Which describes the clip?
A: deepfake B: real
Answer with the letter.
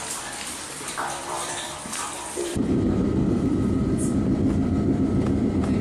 A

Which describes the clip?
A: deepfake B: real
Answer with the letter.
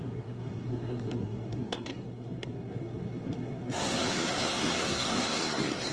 A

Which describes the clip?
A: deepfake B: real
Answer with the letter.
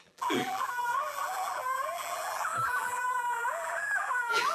A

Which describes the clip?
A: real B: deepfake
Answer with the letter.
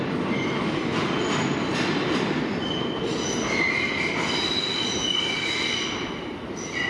A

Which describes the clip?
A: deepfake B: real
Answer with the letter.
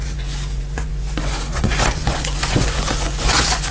A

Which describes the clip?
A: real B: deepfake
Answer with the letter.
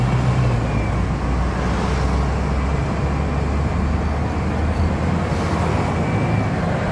A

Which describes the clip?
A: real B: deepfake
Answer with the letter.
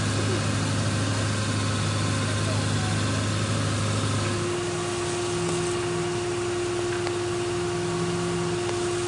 A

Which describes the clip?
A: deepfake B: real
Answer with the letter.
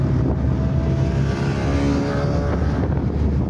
B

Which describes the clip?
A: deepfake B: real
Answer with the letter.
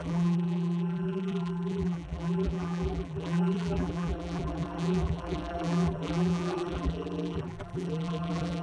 A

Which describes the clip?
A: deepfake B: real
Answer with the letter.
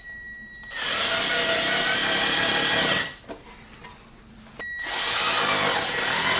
B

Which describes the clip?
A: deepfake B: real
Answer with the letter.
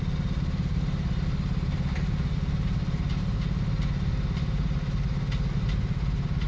B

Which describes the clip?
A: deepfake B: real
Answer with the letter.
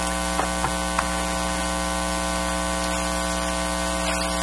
B